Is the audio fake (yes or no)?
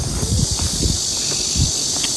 no